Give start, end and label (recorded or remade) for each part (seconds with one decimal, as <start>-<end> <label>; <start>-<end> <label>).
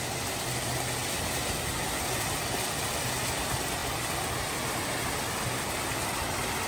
0.0-6.7 recorded